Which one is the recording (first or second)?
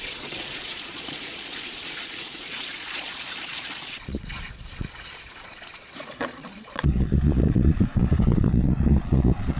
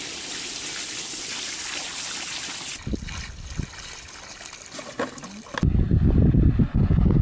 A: second